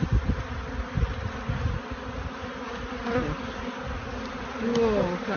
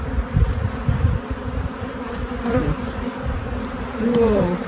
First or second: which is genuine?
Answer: first